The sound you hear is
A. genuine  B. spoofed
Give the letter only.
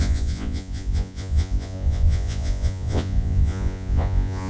B